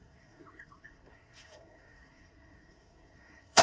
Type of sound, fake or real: fake